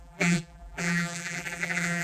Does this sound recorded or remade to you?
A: remade